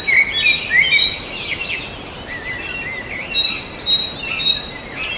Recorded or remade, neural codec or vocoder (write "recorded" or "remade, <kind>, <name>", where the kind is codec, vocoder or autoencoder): recorded